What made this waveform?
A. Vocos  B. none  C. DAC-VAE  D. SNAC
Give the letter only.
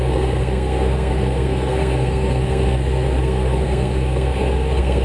D